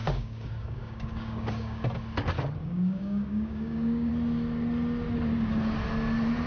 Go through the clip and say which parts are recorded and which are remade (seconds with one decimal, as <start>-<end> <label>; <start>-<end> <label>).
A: 0.0-1.8 remade; 1.8-2.6 recorded; 2.6-4.1 remade; 4.1-6.5 recorded